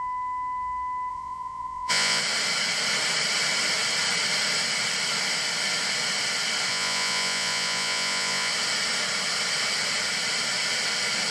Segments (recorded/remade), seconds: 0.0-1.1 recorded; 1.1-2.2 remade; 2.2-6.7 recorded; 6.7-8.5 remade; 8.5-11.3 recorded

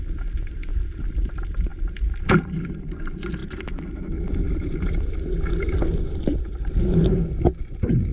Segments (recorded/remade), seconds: 0.0-8.1 recorded

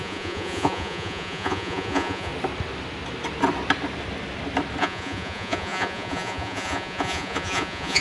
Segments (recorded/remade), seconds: 0.0-2.3 remade; 2.3-4.8 recorded; 4.8-8.0 remade

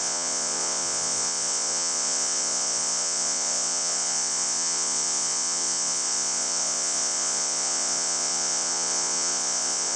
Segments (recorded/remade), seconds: 0.0-10.0 remade

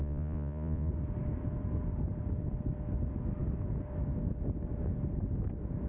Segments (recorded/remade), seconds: 0.0-0.9 remade; 0.9-5.9 recorded